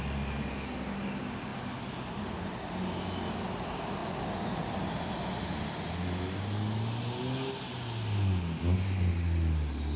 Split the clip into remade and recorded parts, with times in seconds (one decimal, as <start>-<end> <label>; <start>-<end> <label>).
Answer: 0.0-10.0 recorded